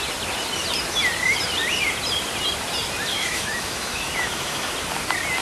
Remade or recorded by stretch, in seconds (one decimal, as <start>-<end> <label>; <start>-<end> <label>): 0.0-3.1 recorded; 3.1-4.7 remade; 4.7-5.4 recorded